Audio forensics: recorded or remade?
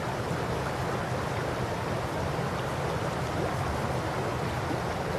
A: recorded